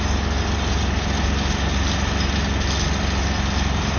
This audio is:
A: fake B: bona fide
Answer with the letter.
B